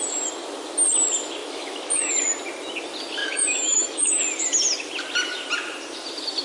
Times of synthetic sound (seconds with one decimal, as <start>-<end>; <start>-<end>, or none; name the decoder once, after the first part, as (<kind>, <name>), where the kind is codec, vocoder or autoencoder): 1.4-2.1 (autoencoder, DAC-VAE); 3.2-4.2